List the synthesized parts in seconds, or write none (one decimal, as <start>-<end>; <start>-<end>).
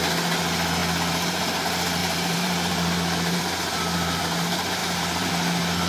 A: 2.0-4.2; 4.8-5.3